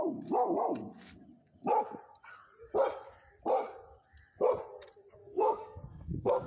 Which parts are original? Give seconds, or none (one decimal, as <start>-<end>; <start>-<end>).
0.0-5.2